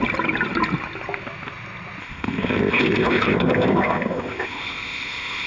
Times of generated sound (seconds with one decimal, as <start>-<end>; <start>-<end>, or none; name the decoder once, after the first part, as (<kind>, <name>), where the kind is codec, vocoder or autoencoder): 2.0-5.5 (codec, ZipCodec)